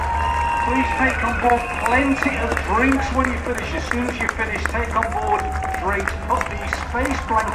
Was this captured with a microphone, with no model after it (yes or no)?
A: yes